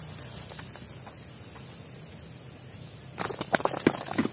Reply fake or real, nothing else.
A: real